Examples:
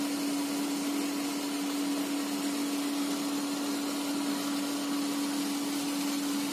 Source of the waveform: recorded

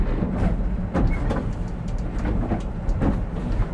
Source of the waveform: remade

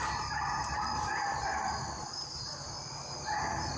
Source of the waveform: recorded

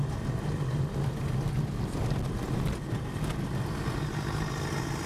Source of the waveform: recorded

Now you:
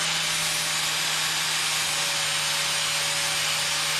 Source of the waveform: recorded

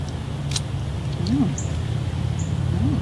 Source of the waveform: recorded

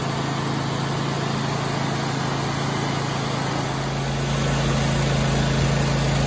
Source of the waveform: recorded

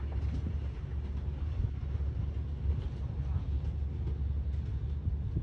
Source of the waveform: recorded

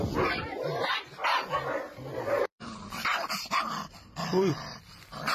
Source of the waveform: remade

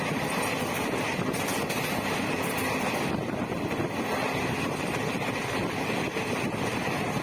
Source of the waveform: recorded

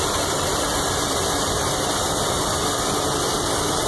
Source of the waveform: remade